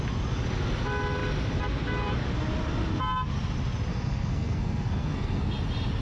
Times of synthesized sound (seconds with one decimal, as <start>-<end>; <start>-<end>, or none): 3.9-5.5